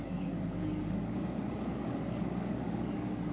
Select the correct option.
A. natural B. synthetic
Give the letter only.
B